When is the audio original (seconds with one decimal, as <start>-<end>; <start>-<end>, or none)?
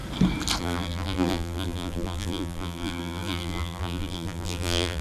0.0-0.6